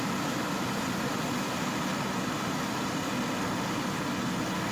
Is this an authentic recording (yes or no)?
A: yes